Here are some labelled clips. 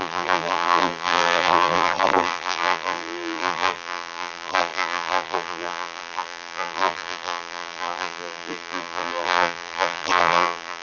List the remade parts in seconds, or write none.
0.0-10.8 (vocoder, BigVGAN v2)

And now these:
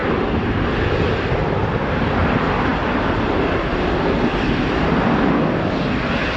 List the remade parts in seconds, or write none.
none

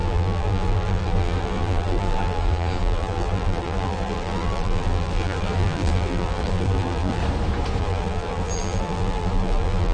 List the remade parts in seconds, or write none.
0.0-7.2 (vocoder, BigVGAN v2); 7.8-9.9

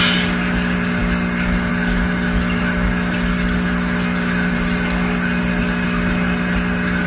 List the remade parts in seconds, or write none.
none

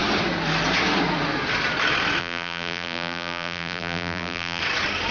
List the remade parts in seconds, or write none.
2.2-4.6 (vocoder, BigVGAN v2)